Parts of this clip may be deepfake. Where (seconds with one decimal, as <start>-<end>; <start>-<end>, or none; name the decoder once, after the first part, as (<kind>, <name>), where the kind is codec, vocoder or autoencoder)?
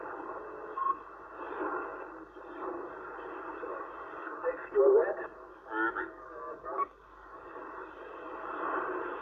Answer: 4.2-4.7 (codec, DAC); 5.5-7.6